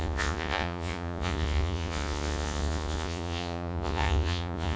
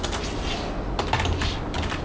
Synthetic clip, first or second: first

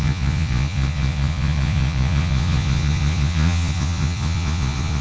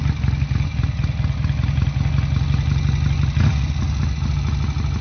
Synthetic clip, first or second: first